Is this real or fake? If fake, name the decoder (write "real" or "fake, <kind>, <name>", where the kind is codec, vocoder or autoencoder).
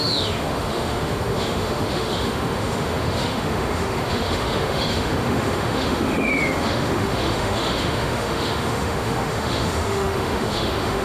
fake, autoencoder, DAC-VAE